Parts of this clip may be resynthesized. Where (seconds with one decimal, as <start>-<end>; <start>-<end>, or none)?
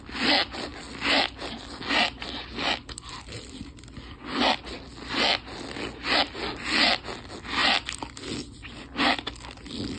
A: none